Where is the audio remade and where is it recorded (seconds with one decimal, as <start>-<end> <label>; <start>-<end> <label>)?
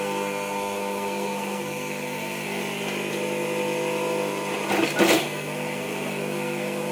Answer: 0.0-2.6 remade; 2.6-5.1 recorded; 5.1-6.9 remade